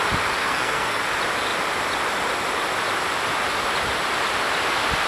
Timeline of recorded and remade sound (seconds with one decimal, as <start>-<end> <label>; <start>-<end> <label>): 0.0-0.4 recorded; 0.4-1.0 remade; 1.0-5.1 recorded